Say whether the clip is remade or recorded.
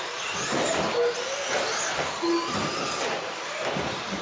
recorded